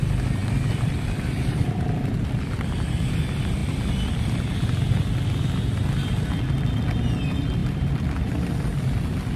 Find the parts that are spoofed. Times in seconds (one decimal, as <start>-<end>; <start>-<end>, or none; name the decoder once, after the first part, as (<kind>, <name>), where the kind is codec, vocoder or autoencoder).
0.4-3.1 (vocoder, BigVGAN v2); 7.6-8.3